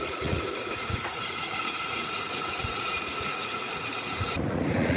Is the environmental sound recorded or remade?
remade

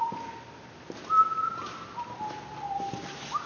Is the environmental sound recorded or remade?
recorded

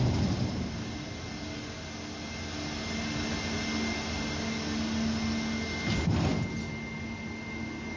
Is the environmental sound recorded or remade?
recorded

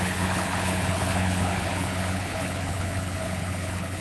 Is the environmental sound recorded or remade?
remade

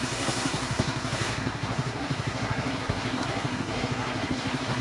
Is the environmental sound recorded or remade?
remade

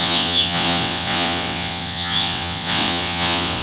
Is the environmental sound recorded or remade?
remade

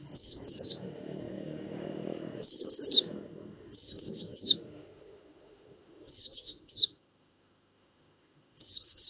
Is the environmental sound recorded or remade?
remade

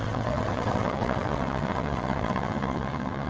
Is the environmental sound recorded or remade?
remade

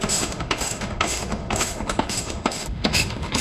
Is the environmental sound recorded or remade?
remade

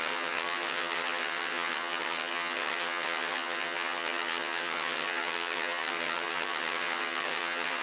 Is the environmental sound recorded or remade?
remade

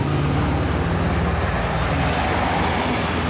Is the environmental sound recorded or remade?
recorded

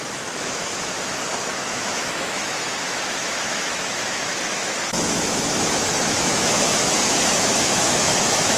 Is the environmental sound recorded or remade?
remade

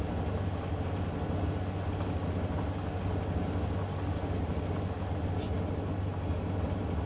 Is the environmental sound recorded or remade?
recorded